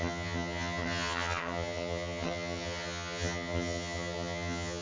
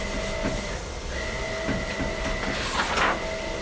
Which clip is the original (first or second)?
second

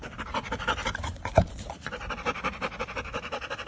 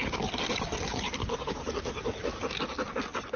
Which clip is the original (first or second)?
second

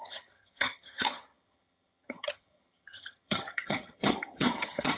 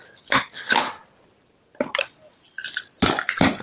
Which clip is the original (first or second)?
second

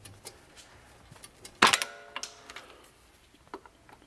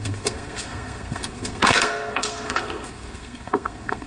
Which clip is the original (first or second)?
first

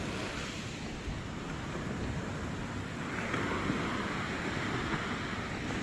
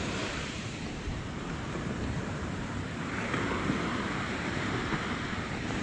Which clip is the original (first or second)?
first